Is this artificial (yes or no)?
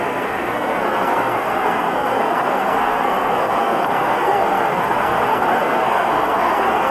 yes